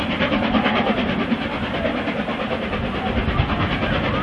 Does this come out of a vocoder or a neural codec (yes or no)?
no